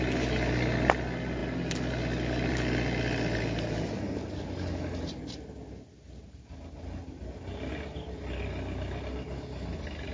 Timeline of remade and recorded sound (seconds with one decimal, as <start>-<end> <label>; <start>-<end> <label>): 0.0-10.1 recorded